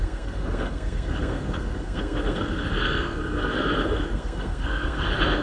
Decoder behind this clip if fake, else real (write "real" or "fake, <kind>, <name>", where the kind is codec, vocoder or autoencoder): fake, codec, SNAC